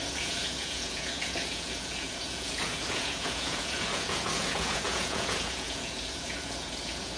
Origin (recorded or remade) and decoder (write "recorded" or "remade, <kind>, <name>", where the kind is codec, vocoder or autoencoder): remade, vocoder, Vocos